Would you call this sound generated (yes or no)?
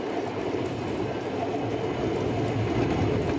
no